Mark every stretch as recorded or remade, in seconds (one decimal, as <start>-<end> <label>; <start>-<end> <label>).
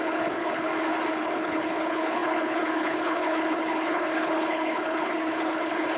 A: 0.0-0.7 remade; 0.7-1.2 recorded; 1.2-6.0 remade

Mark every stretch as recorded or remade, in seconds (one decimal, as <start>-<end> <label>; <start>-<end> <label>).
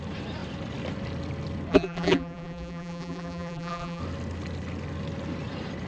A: 0.0-1.7 recorded; 1.7-4.0 remade; 4.0-5.9 recorded